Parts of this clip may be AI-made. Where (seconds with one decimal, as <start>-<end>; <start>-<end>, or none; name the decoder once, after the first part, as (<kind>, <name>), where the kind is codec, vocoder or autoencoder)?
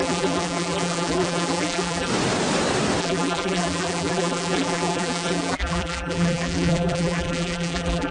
0.0-2.1 (vocoder, BigVGAN v2); 3.0-8.1